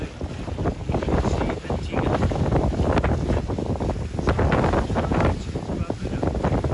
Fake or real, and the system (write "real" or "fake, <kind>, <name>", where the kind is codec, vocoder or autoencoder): real